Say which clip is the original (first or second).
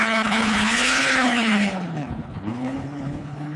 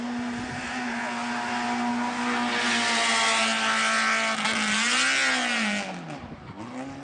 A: second